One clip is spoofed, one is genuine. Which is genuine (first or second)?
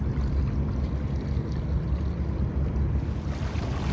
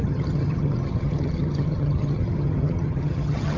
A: first